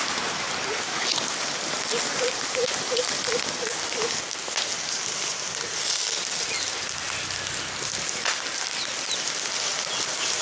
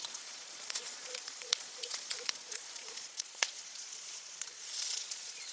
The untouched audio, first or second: first